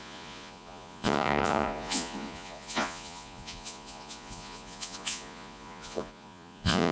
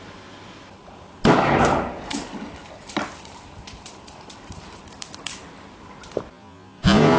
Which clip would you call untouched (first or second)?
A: second